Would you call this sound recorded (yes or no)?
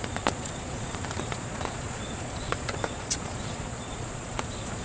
no